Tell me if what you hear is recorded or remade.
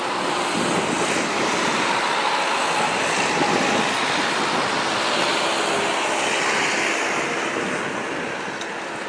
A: recorded